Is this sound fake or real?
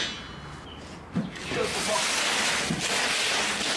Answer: real